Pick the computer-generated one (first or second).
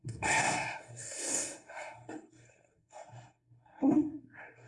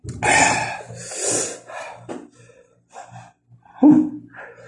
first